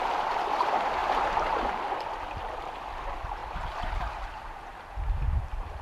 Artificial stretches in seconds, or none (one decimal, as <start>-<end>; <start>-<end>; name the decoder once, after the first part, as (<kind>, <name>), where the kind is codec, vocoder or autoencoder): 1.0-1.7 (vocoder, BigVGAN v2); 3.4-5.8